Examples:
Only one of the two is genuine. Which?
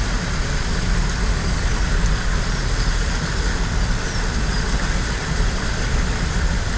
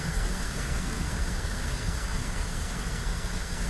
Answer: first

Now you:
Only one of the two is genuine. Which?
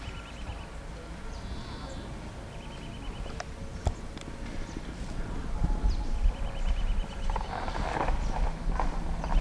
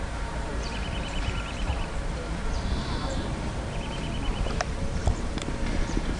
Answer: first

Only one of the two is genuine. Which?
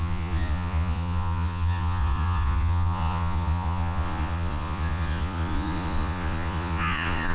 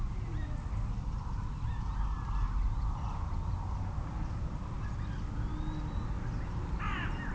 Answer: second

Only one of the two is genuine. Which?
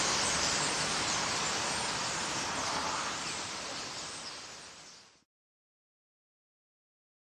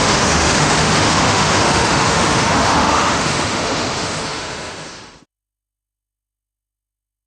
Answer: first